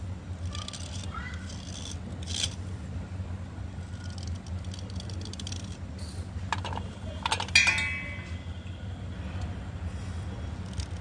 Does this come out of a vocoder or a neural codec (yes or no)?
no